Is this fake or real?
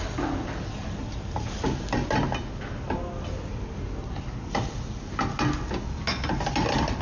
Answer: real